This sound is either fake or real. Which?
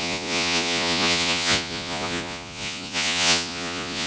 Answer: fake